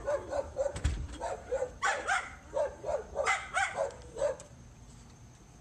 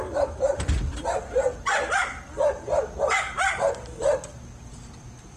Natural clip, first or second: second